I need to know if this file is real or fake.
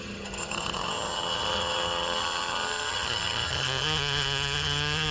fake